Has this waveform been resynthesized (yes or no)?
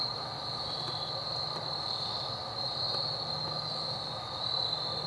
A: no